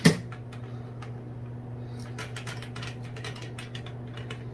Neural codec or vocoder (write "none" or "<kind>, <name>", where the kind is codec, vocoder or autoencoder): none